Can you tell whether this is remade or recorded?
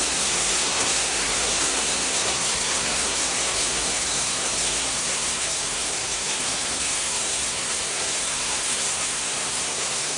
remade